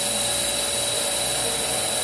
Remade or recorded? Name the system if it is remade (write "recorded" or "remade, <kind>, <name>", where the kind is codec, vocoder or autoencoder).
recorded